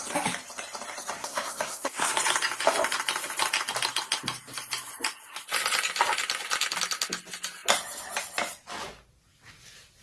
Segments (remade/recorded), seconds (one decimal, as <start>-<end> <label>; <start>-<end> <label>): 0.0-1.2 recorded; 1.2-2.1 remade; 2.1-10.0 recorded